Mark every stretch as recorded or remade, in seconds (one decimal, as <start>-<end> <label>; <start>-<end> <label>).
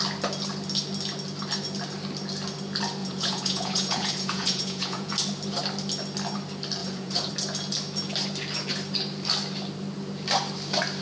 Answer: 0.0-3.0 recorded; 3.0-5.1 remade; 5.1-6.8 recorded; 6.8-7.3 remade; 7.3-11.0 recorded